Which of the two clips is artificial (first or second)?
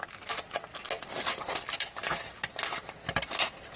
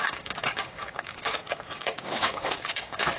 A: second